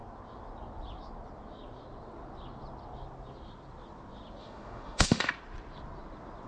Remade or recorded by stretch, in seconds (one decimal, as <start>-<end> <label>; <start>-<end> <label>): 0.0-4.4 recorded; 4.4-5.3 remade; 5.3-6.5 recorded